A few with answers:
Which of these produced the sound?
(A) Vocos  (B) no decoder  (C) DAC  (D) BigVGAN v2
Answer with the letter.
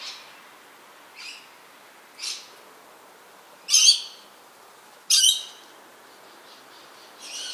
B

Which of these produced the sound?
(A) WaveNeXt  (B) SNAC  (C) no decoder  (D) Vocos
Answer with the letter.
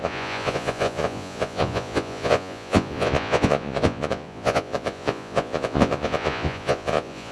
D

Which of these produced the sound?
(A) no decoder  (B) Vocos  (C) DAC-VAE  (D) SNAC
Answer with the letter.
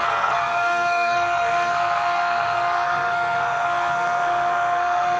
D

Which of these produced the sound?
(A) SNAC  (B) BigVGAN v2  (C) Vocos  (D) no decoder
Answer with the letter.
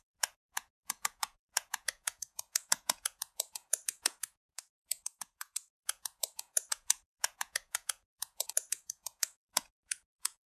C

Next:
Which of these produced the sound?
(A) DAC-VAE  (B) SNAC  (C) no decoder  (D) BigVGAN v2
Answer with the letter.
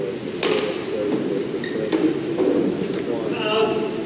C